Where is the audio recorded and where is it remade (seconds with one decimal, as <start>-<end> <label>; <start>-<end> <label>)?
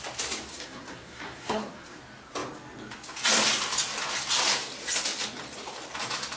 0.0-0.5 recorded; 0.5-2.0 remade; 2.0-6.4 recorded